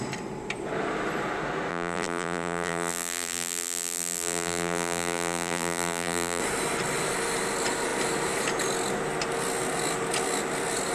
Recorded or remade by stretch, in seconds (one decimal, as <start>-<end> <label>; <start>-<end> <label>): 0.0-1.7 recorded; 1.7-6.4 remade; 6.4-10.9 recorded